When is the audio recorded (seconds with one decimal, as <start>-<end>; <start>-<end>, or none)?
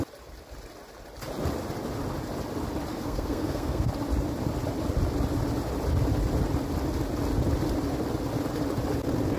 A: 0.0-2.9; 3.9-9.4